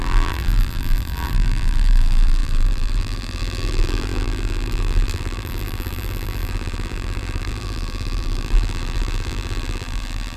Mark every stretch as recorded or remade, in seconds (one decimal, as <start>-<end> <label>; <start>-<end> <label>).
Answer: 0.0-10.4 remade

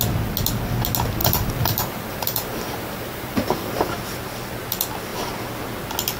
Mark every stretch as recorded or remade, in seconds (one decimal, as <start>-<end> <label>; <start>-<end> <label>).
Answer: 0.0-1.2 recorded; 1.2-3.9 remade; 3.9-6.2 recorded

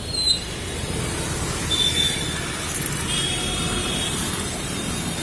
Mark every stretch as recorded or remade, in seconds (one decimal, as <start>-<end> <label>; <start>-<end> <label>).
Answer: 0.0-3.8 recorded; 3.8-5.2 remade

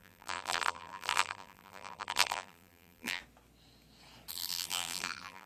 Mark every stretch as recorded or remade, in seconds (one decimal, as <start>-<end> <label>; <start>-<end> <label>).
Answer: 0.0-3.2 remade; 3.2-4.3 recorded; 4.3-5.5 remade

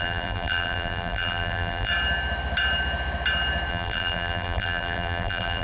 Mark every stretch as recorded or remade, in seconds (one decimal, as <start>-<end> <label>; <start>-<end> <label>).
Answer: 0.0-1.9 remade; 1.9-3.7 recorded; 3.7-5.6 remade

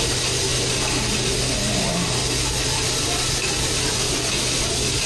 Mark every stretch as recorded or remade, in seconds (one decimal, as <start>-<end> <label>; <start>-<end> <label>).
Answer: 0.0-0.5 recorded; 0.5-1.3 remade; 1.3-2.2 recorded; 2.2-4.6 remade; 4.6-5.1 recorded

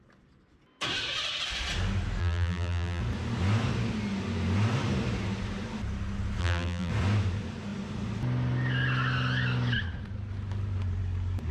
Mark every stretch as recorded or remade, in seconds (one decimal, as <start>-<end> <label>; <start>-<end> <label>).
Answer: 0.0-2.2 recorded; 2.2-3.0 remade; 3.0-6.4 recorded; 6.4-6.9 remade; 6.9-11.5 recorded